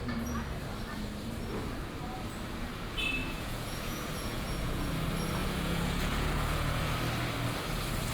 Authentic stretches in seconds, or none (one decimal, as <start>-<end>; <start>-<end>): 0.0-3.2; 4.9-5.4; 6.8-8.1